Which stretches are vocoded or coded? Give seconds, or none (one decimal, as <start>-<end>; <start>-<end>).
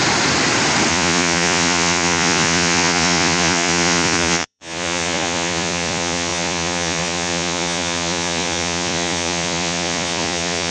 0.9-10.7